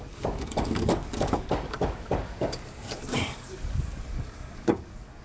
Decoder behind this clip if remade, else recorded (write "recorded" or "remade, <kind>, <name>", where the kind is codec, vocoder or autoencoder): remade, codec, DAC